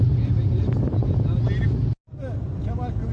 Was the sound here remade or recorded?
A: recorded